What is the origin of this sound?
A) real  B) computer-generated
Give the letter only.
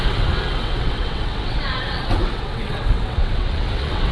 B